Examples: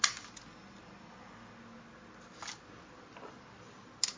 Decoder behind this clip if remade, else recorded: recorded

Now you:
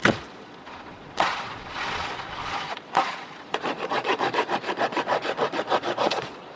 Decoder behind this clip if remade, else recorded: remade, vocoder, Vocos